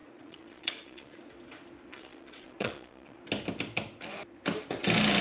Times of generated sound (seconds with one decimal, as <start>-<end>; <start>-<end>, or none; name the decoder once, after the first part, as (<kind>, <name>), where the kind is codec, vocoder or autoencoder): 0.0-1.2 (vocoder, Vocos); 1.9-3.2